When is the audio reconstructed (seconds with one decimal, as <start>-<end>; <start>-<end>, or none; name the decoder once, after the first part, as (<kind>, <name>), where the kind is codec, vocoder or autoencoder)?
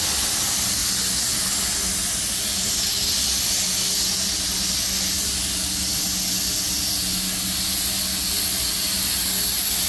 none